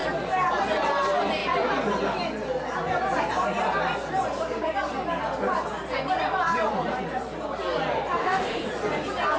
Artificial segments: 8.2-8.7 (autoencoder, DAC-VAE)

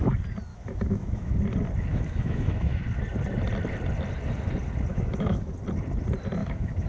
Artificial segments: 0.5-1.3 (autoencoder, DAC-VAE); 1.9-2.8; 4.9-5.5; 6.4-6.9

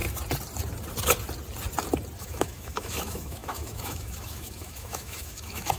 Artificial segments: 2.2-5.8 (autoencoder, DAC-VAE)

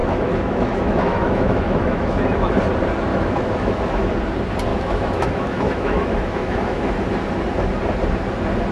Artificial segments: 0.0-2.5 (autoencoder, DAC-VAE); 3.1-4.1; 4.7-7.0

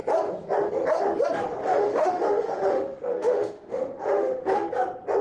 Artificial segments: 1.6-4.7 (autoencoder, DAC-VAE)

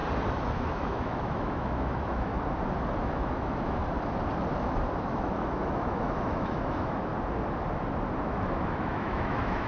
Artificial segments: 0.5-2.3 (autoencoder, DAC-VAE); 3.0-3.8; 5.0-7.1; 8.2-9.7

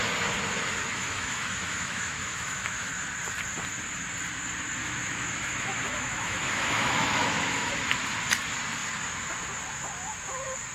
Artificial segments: 1.0-2.9 (autoencoder, DAC-VAE); 4.8-7.7